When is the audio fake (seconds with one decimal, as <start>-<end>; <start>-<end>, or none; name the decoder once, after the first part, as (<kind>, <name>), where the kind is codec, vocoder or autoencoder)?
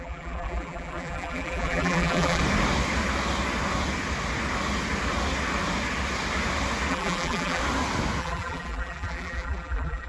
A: 0.0-2.4 (vocoder, BigVGAN v2); 6.9-7.6; 8.2-10.1